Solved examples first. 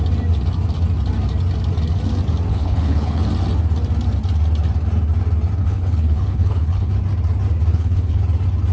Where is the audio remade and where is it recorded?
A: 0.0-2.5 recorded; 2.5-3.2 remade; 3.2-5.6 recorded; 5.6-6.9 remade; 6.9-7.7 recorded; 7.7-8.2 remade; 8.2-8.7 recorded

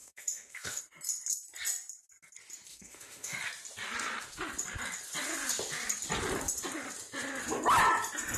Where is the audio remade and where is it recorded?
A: 0.0-0.8 remade; 0.8-2.7 recorded; 2.7-3.4 remade; 3.4-8.4 recorded

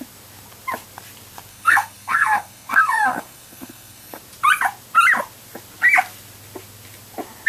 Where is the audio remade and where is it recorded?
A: 0.0-1.5 recorded; 1.5-4.2 remade; 4.2-7.5 recorded